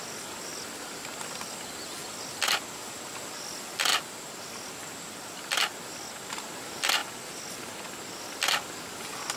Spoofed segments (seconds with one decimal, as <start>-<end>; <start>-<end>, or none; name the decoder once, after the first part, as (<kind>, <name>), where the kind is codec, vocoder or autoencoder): none